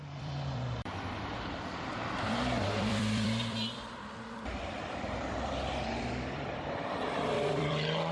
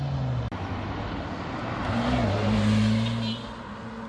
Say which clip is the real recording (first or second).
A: second